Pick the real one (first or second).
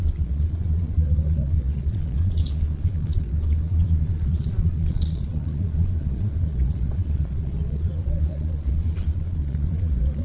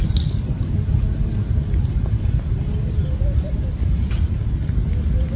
second